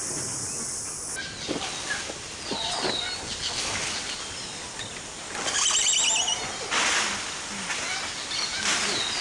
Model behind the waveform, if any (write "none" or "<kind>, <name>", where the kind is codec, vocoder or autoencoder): none